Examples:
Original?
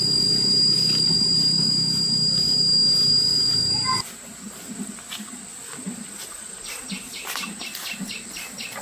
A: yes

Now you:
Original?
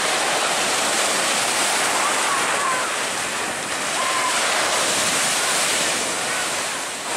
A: yes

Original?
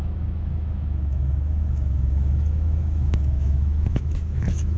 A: no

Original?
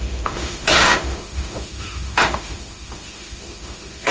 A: no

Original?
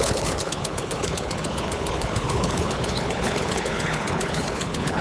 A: no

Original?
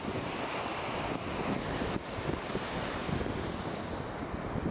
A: yes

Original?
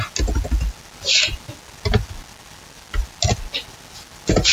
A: yes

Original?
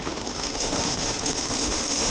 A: no